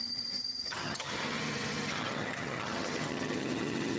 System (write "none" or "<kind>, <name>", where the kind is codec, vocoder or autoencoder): vocoder, HiFi-GAN